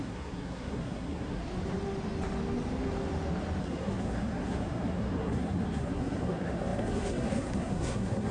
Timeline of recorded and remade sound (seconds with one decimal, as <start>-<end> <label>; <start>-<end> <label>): 0.0-1.4 remade; 1.4-3.6 recorded; 3.6-8.3 remade